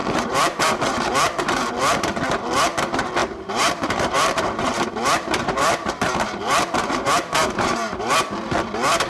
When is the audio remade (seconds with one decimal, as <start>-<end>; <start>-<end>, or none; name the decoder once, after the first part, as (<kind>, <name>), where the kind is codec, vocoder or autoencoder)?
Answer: 0.0-1.6 (vocoder, BigVGAN v2); 3.2-8.0